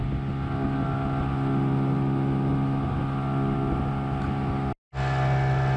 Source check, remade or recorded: recorded